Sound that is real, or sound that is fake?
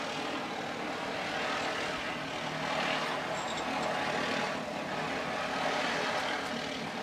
real